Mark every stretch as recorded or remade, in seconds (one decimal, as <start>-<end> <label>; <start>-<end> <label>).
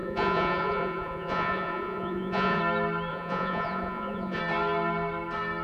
0.0-2.6 remade; 2.6-3.1 recorded; 3.1-4.4 remade; 4.4-5.6 recorded